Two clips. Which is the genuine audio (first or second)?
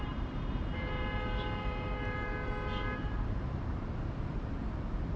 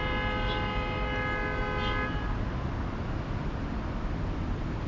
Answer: second